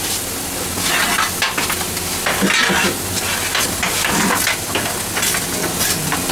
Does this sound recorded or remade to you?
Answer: recorded